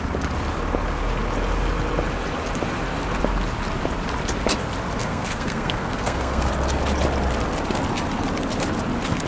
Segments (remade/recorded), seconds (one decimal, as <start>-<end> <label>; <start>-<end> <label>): 0.0-5.0 recorded; 5.0-6.5 remade; 6.5-9.3 recorded